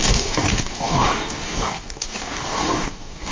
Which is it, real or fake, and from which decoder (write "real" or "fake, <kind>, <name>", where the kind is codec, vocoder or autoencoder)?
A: fake, codec, DAC